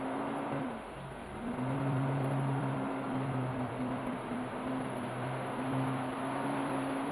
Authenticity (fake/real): fake